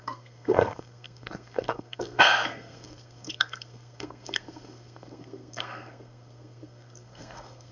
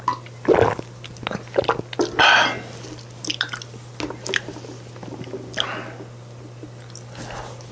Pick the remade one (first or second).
first